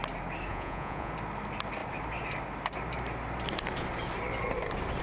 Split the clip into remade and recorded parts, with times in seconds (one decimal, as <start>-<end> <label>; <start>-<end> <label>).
0.0-0.5 recorded; 0.5-1.1 remade; 1.1-5.0 recorded

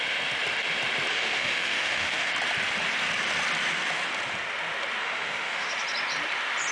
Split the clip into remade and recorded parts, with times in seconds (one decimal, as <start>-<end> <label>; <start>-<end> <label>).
0.0-1.1 recorded; 1.1-2.3 remade; 2.3-5.0 recorded; 5.0-5.7 remade; 5.7-6.7 recorded

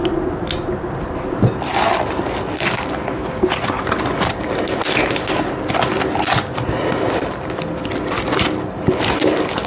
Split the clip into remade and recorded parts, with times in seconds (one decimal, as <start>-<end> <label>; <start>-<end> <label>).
0.0-9.7 recorded

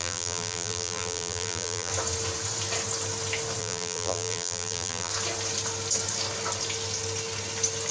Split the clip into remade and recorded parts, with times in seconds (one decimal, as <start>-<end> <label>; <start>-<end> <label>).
0.0-1.9 remade; 1.9-3.6 recorded; 3.6-5.1 remade; 5.1-7.9 recorded

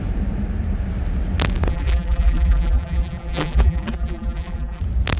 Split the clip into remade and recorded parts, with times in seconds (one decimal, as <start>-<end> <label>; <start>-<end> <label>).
0.0-1.7 recorded; 1.7-4.8 remade; 4.8-5.2 recorded

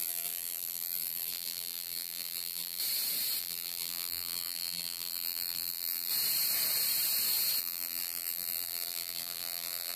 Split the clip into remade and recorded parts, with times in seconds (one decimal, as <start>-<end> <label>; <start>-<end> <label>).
0.0-2.8 remade; 2.8-3.4 recorded; 3.4-6.1 remade; 6.1-7.6 recorded; 7.6-10.0 remade

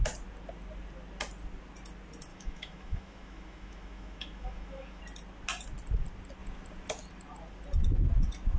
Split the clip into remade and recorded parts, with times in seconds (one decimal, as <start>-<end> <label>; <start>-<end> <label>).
0.0-2.3 recorded; 2.3-5.0 remade; 5.0-8.6 recorded